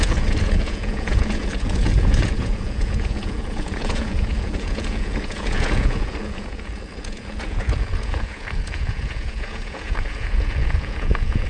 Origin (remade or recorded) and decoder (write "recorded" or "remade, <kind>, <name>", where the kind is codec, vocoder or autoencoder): remade, vocoder, Vocos